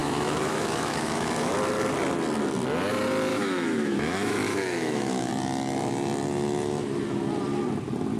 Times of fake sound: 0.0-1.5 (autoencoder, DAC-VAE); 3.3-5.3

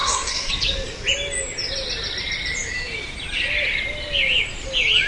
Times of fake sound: 0.0-0.5 (codec, SNAC)

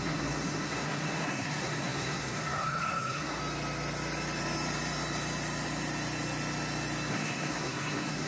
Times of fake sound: 0.0-3.4 (codec, SNAC); 7.1-8.3

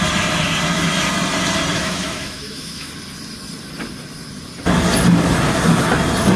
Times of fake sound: 1.7-2.9 (autoencoder, DAC-VAE)